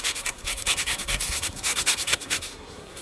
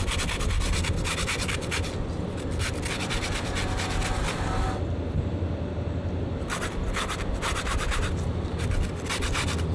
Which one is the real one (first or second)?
second